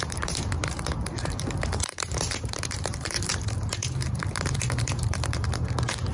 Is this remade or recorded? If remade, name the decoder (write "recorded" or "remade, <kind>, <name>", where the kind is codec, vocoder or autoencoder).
remade, vocoder, BigVGAN v2